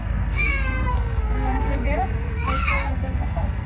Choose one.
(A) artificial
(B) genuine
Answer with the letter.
A